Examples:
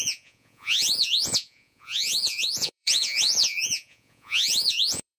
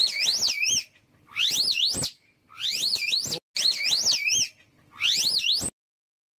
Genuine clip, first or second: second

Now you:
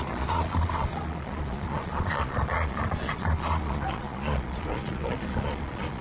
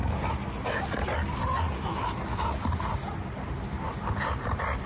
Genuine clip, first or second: second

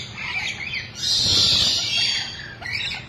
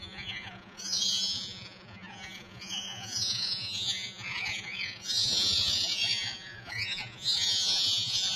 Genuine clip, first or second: first